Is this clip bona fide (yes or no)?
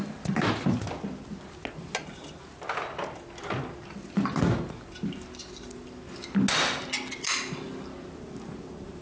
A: yes